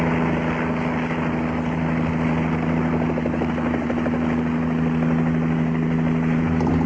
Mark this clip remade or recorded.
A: recorded